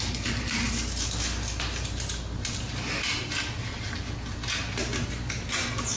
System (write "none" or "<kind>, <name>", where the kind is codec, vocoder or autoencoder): none